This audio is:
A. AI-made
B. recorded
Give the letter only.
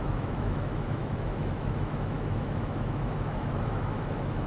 A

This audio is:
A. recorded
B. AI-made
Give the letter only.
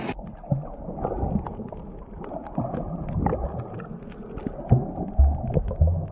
A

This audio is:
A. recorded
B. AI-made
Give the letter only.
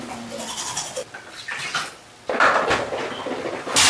A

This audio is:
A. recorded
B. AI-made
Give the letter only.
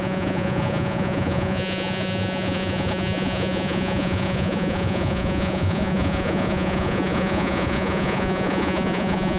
B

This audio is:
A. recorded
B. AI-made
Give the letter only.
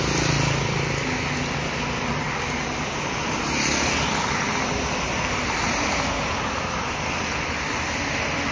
A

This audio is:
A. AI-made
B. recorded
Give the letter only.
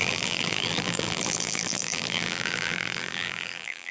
A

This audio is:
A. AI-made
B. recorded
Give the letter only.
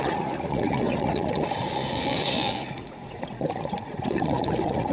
A